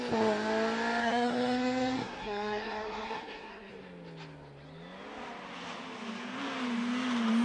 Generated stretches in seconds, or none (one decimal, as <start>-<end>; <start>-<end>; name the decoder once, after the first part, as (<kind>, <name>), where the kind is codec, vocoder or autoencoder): 1.0-3.7 (codec, SNAC)